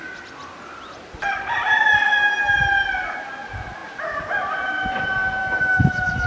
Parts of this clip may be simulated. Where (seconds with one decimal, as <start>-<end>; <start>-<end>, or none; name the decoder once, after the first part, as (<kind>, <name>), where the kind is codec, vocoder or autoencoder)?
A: 5.4-6.3 (autoencoder, DAC-VAE)